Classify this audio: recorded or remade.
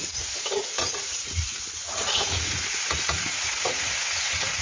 remade